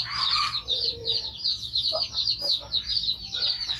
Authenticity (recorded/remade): recorded